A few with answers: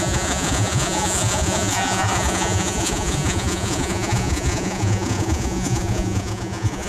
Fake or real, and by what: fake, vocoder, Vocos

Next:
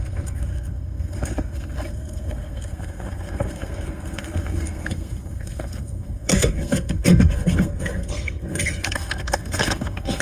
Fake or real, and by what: fake, codec, SNAC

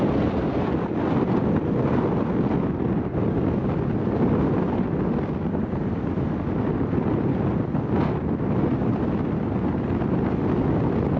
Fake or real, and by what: real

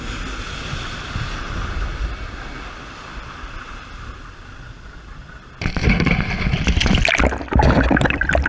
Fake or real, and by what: real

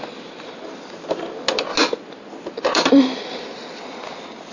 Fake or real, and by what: real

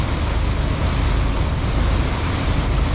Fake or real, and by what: real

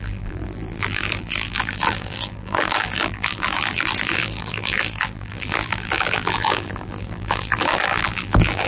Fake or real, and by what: fake, vocoder, BigVGAN v2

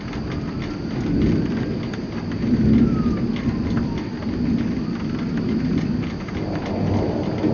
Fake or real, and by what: real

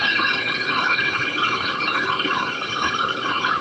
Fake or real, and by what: fake, codec, HILCodec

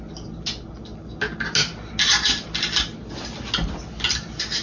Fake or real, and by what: real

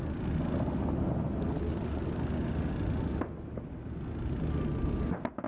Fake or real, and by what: real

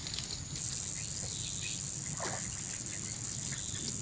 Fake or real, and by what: real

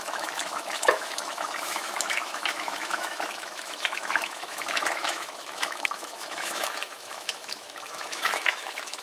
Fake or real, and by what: fake, autoencoder, DAC-VAE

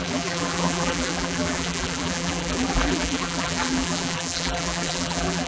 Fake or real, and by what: fake, vocoder, BigVGAN v2